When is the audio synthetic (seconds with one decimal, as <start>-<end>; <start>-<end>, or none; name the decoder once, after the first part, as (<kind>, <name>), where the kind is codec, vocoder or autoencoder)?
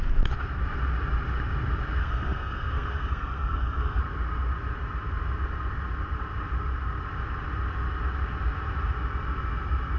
2.0-4.0 (codec, SNAC)